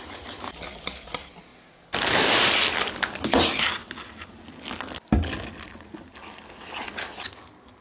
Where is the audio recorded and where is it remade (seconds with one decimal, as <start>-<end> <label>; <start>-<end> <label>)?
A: 0.0-7.8 recorded